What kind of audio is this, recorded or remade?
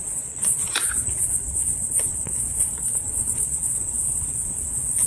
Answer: remade